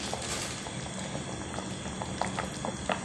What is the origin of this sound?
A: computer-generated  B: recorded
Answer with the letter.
B